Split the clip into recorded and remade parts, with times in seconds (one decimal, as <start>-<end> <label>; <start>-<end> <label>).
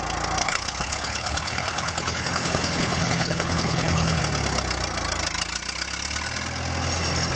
0.0-0.4 recorded; 0.4-4.2 remade; 4.2-7.4 recorded